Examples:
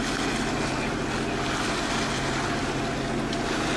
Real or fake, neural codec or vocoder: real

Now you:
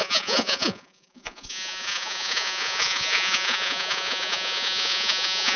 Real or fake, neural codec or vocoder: fake, vocoder, Vocos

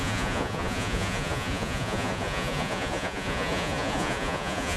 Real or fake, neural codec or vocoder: fake, vocoder, Vocos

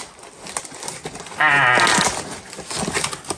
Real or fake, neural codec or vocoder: real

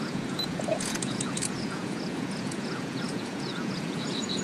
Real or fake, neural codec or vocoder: fake, vocoder, Vocos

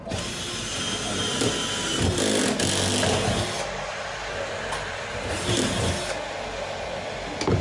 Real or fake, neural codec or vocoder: real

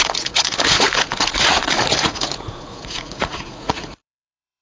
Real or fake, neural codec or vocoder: fake, vocoder, Vocos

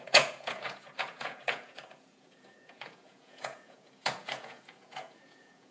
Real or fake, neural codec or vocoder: fake, vocoder, Vocos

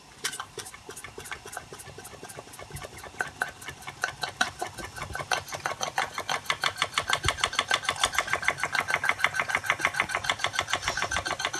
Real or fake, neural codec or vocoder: real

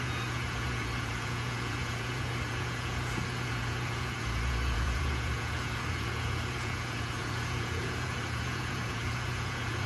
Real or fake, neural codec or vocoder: fake, vocoder, Vocos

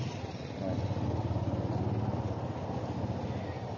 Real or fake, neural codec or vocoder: real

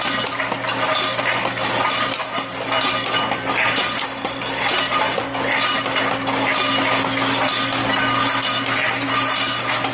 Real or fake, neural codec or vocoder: real